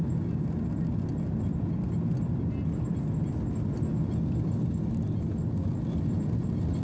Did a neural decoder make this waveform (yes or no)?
no